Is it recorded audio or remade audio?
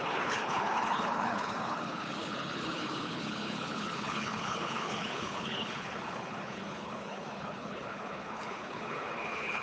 remade